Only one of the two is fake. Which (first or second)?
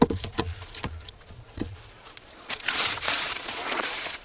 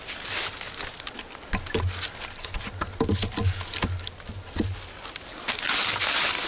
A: first